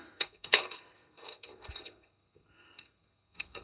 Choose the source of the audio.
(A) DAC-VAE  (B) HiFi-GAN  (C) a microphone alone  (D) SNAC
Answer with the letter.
D